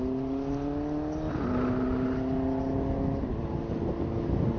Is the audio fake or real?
real